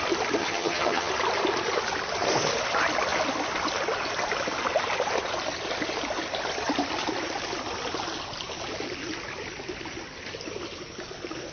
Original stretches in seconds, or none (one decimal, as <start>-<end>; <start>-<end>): 0.0-0.4; 1.1-11.5